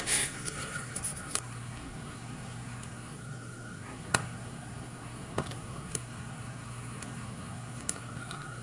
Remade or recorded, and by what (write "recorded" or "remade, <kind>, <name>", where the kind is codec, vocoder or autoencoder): remade, codec, SNAC